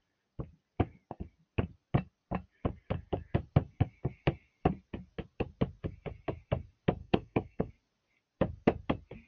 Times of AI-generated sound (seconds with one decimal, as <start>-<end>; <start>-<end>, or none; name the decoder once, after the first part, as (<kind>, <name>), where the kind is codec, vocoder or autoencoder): 7.0-7.7 (codec, SNAC)